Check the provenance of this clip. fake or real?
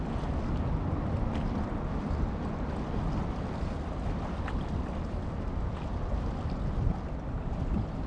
real